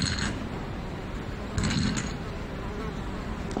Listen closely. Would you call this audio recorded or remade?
recorded